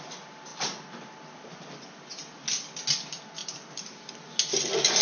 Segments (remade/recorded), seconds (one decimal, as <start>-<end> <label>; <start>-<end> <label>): 0.0-0.5 recorded; 0.5-1.5 remade; 1.5-3.4 recorded; 3.4-4.1 remade; 4.1-5.0 recorded